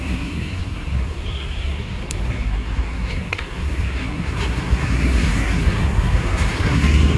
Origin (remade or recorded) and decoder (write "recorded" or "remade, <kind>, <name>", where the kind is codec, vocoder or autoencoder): remade, codec, SNAC